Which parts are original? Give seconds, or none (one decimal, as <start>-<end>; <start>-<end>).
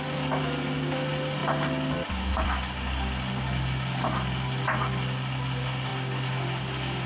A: 0.0-7.1